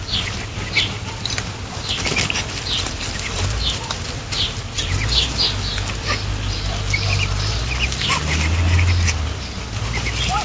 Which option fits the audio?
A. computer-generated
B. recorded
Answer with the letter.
B